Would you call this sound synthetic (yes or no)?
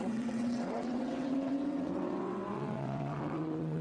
yes